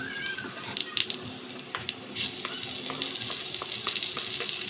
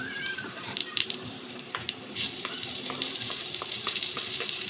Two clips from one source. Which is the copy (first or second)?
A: second